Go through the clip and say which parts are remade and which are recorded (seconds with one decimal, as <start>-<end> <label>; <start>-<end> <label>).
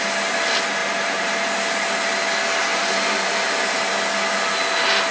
0.0-0.8 recorded; 0.8-1.3 remade; 1.3-2.7 recorded; 2.7-3.9 remade; 3.9-5.1 recorded